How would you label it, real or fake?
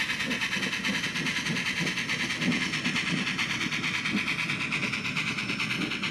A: real